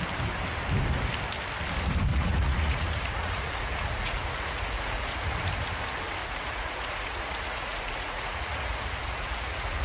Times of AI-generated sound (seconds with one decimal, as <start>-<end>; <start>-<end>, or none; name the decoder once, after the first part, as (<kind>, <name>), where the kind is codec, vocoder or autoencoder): 2.1-5.2 (vocoder, Vocos); 6.2-9.8